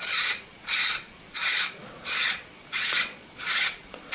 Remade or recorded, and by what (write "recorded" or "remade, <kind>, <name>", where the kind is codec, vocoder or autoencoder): remade, vocoder, Vocos